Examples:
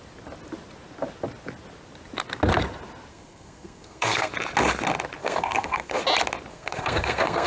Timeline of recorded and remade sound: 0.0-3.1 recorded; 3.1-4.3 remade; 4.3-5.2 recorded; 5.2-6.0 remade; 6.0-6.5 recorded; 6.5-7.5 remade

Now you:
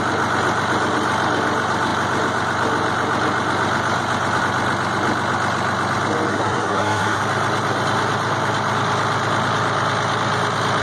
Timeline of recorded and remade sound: 0.0-6.3 recorded; 6.3-7.2 remade; 7.2-10.8 recorded

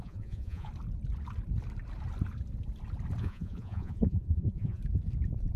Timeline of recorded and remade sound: 0.0-0.7 remade; 0.7-3.2 recorded; 3.2-4.8 remade; 4.8-5.6 recorded

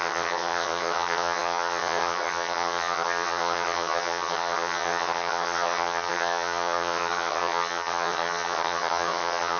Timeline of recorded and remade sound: 0.0-9.6 remade

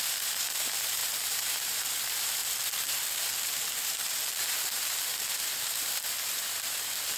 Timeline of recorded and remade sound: 0.0-7.2 remade

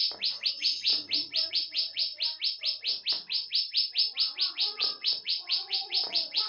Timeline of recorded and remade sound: 0.0-0.5 recorded; 0.5-0.9 remade; 0.9-1.5 recorded; 1.5-2.1 remade; 2.1-4.5 recorded; 4.5-6.5 remade